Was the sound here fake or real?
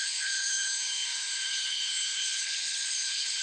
fake